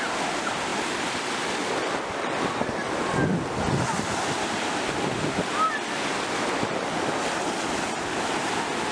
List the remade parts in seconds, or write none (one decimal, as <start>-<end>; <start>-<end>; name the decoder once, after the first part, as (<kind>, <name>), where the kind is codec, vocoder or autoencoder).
none